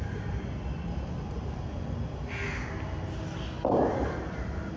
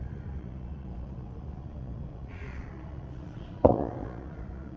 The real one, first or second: first